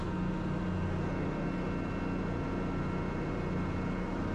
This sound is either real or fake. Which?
real